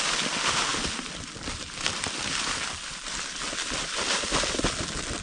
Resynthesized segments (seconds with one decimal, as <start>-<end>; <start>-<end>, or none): none